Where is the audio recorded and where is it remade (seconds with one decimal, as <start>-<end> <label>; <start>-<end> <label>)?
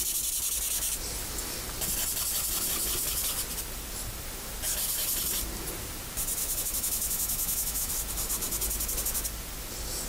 0.0-6.4 recorded; 6.4-7.9 remade; 7.9-10.1 recorded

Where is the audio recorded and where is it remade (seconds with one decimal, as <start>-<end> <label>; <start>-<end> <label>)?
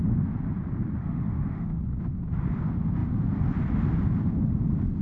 0.0-1.0 recorded; 1.0-1.8 remade; 1.8-5.0 recorded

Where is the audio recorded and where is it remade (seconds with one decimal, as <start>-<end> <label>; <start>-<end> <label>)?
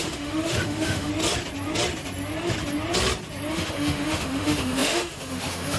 0.0-1.1 remade; 1.1-3.5 recorded; 3.5-5.8 remade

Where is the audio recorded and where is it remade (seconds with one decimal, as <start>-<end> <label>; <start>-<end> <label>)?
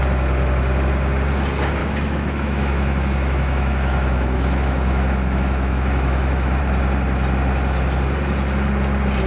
0.0-1.8 recorded; 1.8-6.6 remade; 6.6-9.3 recorded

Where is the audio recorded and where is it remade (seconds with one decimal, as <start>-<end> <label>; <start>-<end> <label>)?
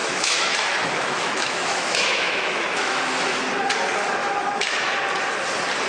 0.0-3.0 remade; 3.0-4.2 recorded; 4.2-4.9 remade; 4.9-5.9 recorded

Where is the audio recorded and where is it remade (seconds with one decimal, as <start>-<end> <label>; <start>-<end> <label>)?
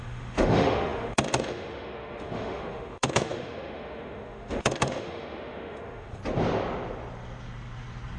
0.0-6.2 remade; 6.2-8.2 recorded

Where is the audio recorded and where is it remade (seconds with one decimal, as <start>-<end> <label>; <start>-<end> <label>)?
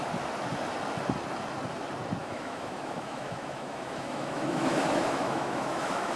0.0-2.2 recorded; 2.2-6.2 remade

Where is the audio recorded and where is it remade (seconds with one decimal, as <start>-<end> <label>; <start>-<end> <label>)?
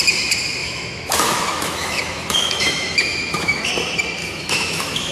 0.0-0.6 recorded; 0.6-3.7 remade; 3.7-4.2 recorded; 4.2-5.1 remade